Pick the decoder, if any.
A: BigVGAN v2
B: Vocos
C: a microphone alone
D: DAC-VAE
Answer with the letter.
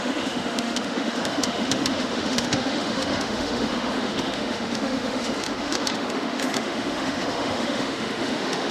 D